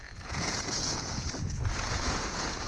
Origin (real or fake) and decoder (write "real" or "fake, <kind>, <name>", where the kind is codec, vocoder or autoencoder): fake, vocoder, Vocos